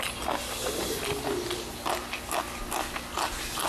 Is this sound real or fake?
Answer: real